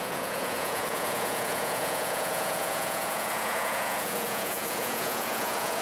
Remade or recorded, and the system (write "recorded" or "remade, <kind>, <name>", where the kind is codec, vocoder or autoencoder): remade, vocoder, Vocos